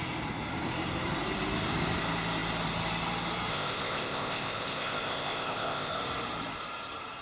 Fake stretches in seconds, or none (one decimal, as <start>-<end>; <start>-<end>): 3.5-6.0